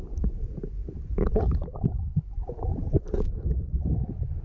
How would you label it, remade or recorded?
remade